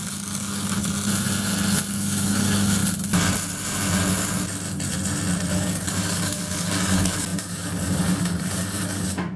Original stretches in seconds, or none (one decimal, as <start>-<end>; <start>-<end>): 0.8-1.9; 2.8-5.5